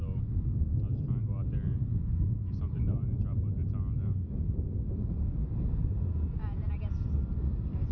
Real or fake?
real